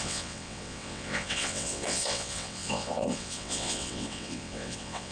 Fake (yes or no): yes